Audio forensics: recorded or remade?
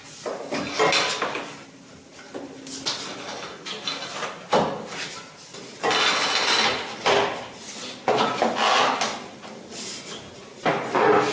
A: recorded